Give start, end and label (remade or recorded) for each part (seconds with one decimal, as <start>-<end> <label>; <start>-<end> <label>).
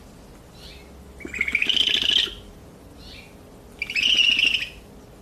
0.0-5.2 recorded